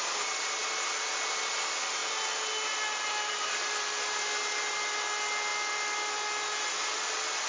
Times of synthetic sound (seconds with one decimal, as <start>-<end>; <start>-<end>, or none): none